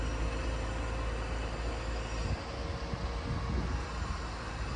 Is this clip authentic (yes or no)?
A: yes